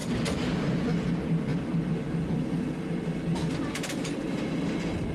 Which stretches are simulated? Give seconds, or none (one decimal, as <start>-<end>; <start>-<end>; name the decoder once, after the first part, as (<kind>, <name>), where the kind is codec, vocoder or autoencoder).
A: none